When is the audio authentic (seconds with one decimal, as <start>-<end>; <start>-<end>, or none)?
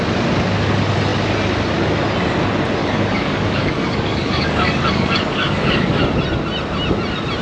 0.0-2.8; 6.0-7.4